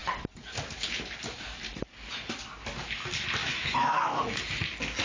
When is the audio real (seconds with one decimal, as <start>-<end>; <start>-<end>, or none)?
0.0-3.4; 4.4-5.0